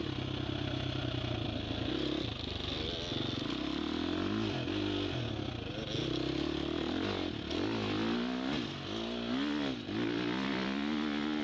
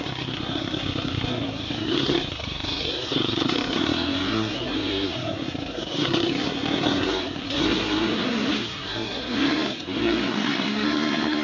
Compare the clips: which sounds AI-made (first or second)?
second